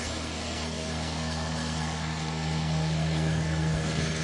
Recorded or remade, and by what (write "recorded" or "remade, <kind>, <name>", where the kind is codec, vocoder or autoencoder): remade, codec, SNAC